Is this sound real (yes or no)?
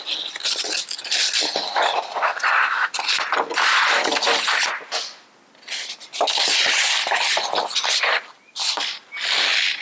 yes